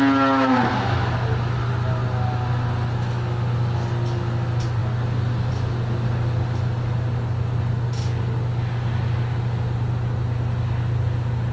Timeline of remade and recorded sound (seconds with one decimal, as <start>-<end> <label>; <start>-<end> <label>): 0.0-11.5 recorded